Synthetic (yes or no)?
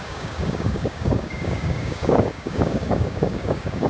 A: yes